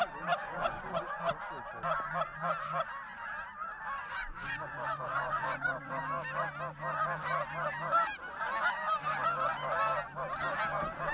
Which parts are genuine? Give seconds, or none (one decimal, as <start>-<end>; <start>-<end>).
0.0-0.4; 1.4-4.1; 6.0-11.1